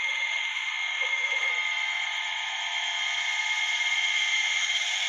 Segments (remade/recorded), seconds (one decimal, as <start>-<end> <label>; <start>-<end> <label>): 0.0-1.5 remade; 1.5-4.6 recorded; 4.6-5.1 remade